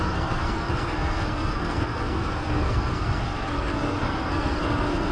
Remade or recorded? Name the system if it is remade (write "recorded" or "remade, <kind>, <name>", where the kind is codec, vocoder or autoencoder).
remade, codec, SNAC